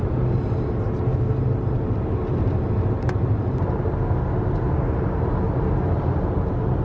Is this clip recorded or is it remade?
recorded